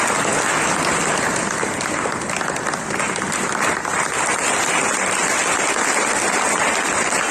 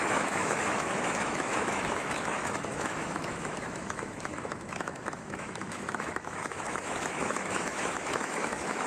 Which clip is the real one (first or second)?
first